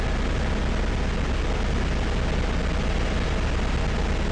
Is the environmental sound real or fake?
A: real